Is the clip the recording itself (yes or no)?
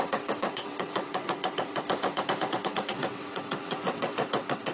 no